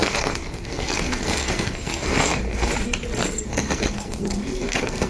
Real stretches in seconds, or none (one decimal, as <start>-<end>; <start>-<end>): 2.7-3.2